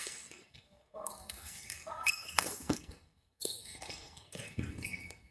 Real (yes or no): no